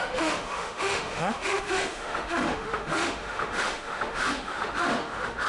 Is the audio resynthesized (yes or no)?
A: yes